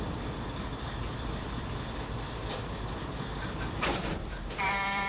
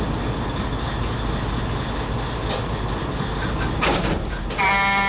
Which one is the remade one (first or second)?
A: first